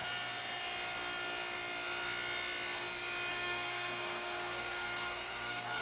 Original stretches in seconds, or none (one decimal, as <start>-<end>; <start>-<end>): 0.0-3.3